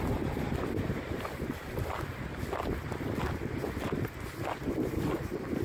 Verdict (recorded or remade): recorded